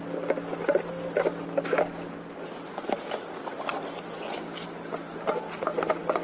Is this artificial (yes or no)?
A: no